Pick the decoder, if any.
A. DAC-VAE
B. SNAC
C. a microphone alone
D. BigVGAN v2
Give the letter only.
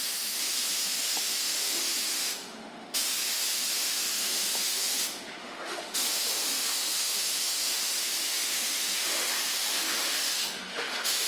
A